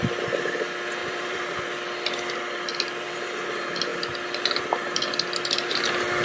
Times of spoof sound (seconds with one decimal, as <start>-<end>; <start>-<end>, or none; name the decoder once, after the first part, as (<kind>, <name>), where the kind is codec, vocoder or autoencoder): 1.0-1.6 (vocoder, BigVGAN v2)